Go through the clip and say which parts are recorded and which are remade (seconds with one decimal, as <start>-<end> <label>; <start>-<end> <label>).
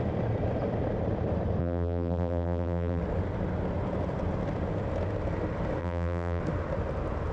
0.0-1.6 recorded; 1.6-3.0 remade; 3.0-5.8 recorded; 5.8-6.4 remade; 6.4-7.3 recorded